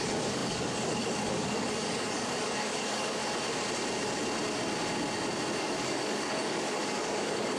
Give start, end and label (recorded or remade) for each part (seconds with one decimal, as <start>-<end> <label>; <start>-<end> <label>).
0.0-3.2 remade; 3.2-5.6 recorded; 5.6-7.6 remade